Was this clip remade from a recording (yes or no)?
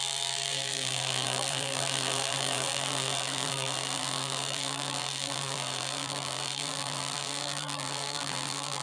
yes